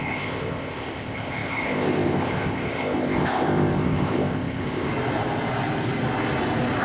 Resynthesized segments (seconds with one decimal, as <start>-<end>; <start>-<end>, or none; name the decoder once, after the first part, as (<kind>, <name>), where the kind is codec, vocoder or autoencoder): 0.0-4.9 (codec, ZipCodec)